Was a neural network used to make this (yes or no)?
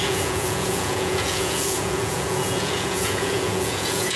yes